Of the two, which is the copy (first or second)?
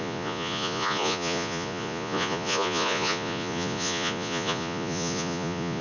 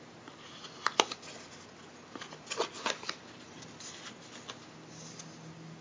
first